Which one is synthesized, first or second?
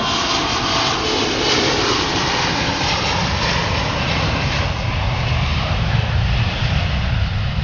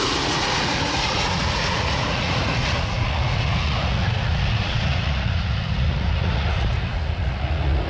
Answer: second